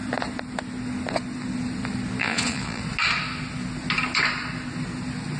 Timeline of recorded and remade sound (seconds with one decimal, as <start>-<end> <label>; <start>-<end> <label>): 0.0-2.2 recorded; 2.2-2.8 remade; 2.8-5.4 recorded